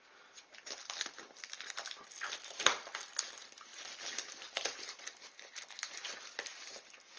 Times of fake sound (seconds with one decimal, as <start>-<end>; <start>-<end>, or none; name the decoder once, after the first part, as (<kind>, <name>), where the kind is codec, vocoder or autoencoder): none